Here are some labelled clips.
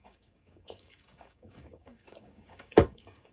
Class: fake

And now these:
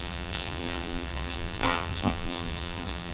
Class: fake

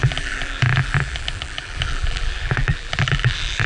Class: fake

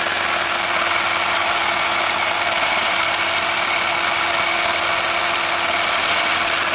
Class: real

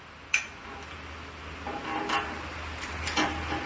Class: fake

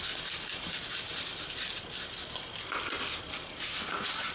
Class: real